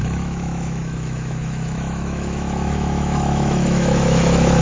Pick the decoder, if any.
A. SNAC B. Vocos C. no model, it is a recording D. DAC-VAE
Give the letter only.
D